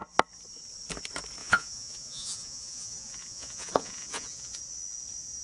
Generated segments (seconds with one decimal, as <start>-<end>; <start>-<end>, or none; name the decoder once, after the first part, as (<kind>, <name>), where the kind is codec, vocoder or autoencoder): 1.4-4.6 (vocoder, Vocos)

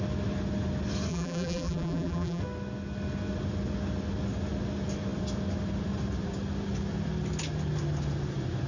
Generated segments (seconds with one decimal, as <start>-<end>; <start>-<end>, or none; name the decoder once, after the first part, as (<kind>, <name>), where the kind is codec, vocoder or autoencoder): 1.1-2.4 (vocoder, BigVGAN v2)